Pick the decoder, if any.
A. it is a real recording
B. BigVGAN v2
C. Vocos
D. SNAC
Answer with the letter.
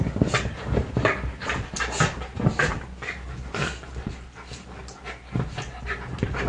A